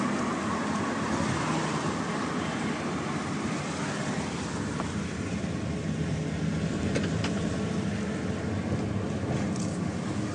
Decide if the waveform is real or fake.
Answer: real